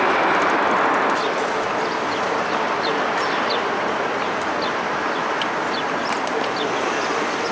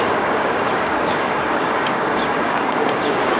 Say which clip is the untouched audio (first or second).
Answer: first